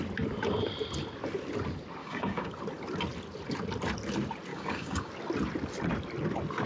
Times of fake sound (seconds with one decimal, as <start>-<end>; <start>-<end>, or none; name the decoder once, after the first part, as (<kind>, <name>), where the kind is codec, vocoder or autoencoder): 2.0-2.5 (codec, DAC); 4.5-5.1